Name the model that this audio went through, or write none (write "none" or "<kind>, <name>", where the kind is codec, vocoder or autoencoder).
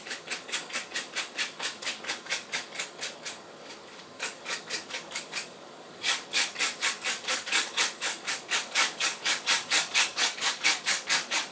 codec, DAC